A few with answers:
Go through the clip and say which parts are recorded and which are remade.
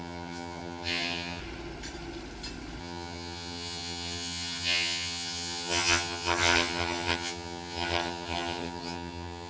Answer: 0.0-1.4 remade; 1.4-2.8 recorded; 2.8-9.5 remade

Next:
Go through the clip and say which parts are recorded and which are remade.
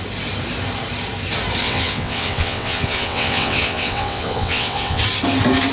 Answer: 0.0-1.6 recorded; 1.6-5.0 remade; 5.0-5.7 recorded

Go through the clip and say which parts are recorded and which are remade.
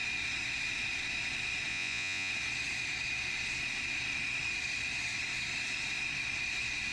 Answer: 0.0-1.7 recorded; 1.7-2.3 remade; 2.3-6.9 recorded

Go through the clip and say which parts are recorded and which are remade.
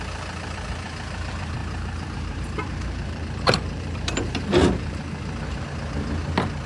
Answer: 0.0-1.6 recorded; 1.6-5.6 remade; 5.6-6.7 recorded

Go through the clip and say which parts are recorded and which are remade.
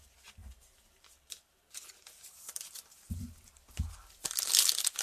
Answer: 0.0-0.4 recorded; 0.4-2.7 remade; 2.7-5.0 recorded